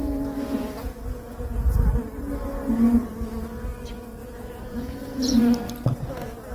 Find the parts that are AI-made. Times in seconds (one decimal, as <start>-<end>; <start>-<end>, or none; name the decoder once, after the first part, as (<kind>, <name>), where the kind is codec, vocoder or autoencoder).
0.0-1.9 (vocoder, Vocos); 4.2-5.4